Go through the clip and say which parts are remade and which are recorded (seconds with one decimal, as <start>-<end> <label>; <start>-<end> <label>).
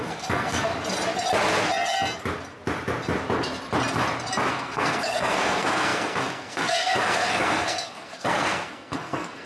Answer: 0.0-0.7 remade; 0.7-4.5 recorded; 4.5-9.5 remade